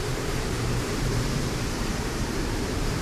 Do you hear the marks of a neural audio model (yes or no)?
yes